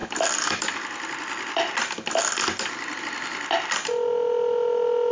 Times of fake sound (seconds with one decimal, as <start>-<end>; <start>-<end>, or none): none